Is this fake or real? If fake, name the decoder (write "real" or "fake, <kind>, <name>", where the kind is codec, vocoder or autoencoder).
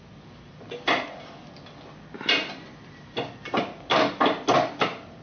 real